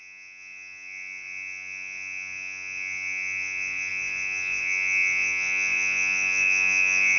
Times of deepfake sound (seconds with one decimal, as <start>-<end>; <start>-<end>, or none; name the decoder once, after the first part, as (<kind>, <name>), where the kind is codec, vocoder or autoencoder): 0.0-7.2 (vocoder, Vocos)